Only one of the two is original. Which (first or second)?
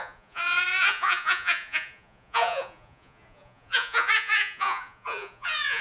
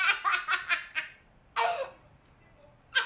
second